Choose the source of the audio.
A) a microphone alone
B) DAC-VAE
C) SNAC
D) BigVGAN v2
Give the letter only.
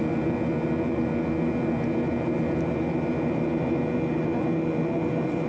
D